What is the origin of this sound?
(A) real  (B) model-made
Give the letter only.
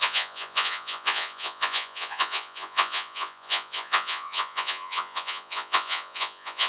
B